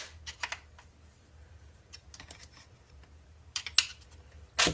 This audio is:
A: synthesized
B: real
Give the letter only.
B